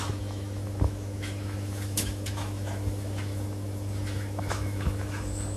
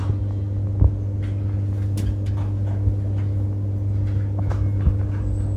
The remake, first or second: first